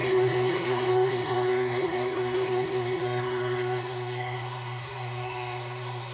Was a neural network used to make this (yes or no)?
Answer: yes